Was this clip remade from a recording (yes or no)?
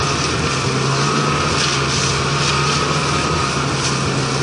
no